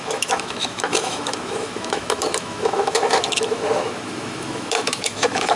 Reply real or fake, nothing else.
fake